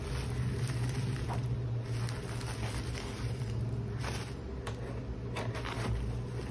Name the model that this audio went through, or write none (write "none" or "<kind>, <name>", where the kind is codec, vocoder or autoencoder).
none